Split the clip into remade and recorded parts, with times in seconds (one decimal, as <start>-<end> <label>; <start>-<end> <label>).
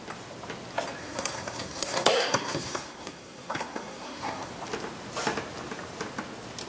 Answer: 0.0-1.0 recorded; 1.0-4.5 remade; 4.5-6.7 recorded